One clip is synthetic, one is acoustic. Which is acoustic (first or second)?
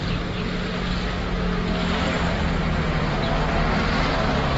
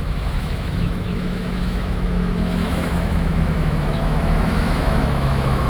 first